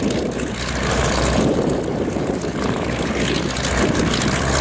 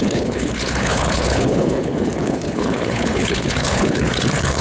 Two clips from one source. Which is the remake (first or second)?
second